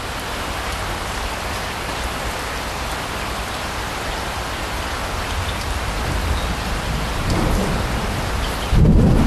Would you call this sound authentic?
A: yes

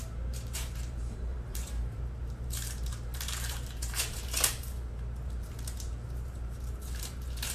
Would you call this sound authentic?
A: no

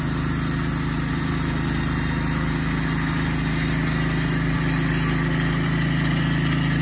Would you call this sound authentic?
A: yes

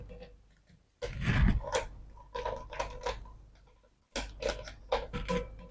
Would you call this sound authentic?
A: yes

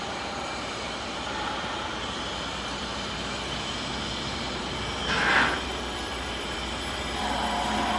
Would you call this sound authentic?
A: no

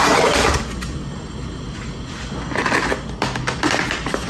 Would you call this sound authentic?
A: yes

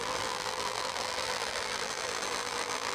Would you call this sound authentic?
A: no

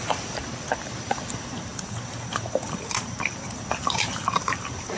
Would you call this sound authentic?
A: no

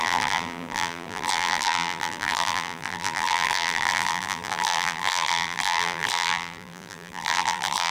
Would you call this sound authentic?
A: no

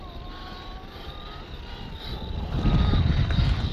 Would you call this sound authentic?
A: no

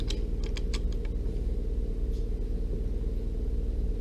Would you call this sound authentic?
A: yes